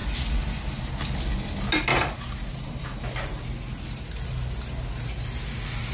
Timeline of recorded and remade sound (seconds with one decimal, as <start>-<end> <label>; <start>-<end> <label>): 0.0-1.9 recorded; 1.9-5.1 remade; 5.1-5.9 recorded